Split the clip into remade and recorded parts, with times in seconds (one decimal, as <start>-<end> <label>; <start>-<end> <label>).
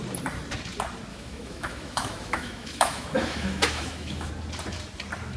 0.0-1.1 recorded; 1.1-4.3 remade; 4.3-5.4 recorded